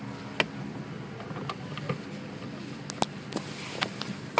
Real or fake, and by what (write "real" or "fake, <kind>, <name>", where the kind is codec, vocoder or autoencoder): real